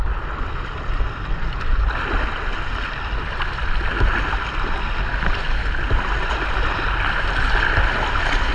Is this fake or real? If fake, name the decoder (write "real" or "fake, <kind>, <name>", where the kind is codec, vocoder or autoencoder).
real